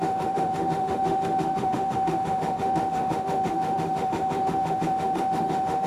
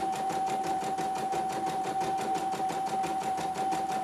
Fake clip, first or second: first